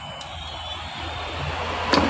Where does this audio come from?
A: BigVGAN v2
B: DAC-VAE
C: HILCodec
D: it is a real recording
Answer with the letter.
D